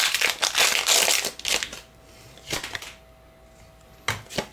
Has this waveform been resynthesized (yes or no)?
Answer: no